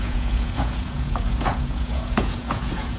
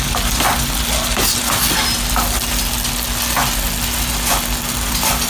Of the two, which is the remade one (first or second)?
first